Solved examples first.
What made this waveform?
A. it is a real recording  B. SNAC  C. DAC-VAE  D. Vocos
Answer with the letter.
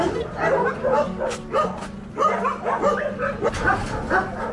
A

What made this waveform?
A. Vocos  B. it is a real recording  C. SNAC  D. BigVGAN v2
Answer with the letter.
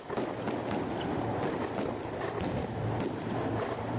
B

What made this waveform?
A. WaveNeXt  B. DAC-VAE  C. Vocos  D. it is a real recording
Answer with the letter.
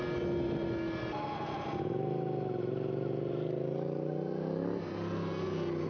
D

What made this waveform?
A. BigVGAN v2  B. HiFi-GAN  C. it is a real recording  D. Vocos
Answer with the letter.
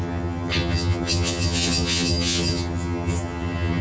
B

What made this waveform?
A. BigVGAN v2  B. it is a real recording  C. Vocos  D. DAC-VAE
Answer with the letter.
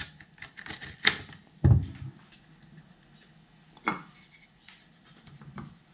B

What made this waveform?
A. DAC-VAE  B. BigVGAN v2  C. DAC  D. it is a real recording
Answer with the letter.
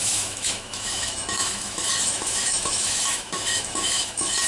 A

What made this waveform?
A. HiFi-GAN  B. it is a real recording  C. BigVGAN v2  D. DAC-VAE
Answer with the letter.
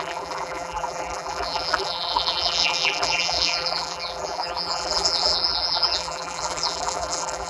C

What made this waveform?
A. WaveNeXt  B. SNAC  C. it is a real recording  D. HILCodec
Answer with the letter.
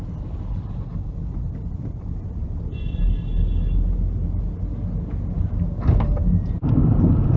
C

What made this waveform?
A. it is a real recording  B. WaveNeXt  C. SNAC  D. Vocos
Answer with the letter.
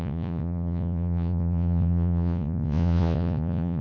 D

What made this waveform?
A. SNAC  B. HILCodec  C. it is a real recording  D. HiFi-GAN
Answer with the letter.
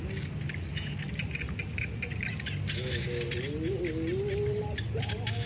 C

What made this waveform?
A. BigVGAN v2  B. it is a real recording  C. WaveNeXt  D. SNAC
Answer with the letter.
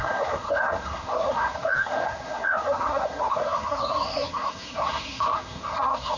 D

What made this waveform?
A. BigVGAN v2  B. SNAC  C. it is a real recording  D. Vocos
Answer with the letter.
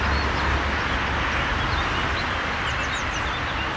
C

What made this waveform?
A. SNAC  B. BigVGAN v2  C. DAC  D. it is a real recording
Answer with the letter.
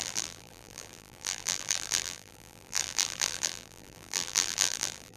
B